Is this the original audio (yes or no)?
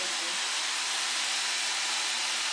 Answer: yes